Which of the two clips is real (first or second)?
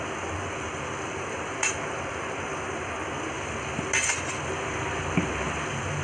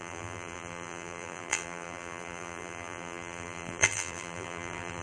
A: first